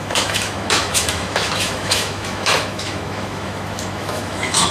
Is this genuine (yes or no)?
no